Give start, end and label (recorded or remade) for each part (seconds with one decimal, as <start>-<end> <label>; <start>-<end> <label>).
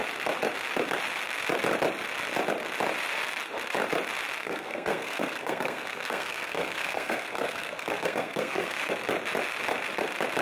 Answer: 0.0-4.4 recorded; 4.4-8.9 remade; 8.9-10.4 recorded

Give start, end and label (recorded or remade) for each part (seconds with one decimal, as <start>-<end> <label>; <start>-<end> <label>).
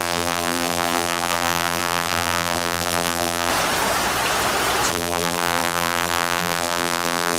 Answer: 0.0-3.5 remade; 3.5-4.9 recorded; 4.9-7.4 remade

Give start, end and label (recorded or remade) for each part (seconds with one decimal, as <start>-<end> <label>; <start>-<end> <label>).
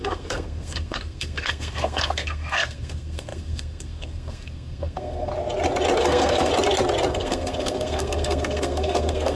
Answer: 0.0-5.3 remade; 5.3-6.0 recorded; 6.0-6.5 remade; 6.5-7.1 recorded; 7.1-9.4 remade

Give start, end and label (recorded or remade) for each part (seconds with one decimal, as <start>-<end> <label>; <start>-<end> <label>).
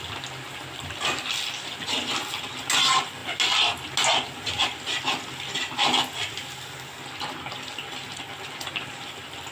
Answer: 0.0-9.5 recorded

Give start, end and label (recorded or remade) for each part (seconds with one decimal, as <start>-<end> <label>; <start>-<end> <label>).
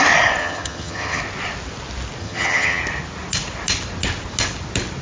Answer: 0.0-0.4 recorded; 0.4-1.2 remade; 1.2-2.2 recorded; 2.2-2.8 remade; 2.8-5.0 recorded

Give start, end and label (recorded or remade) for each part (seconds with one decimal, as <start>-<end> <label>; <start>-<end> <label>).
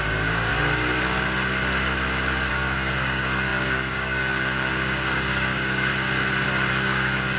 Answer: 0.0-0.5 remade; 0.5-2.5 recorded; 2.5-5.9 remade; 5.9-6.7 recorded; 6.7-7.4 remade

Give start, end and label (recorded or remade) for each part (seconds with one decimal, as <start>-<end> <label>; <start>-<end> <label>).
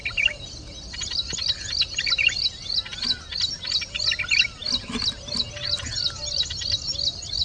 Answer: 0.0-7.4 recorded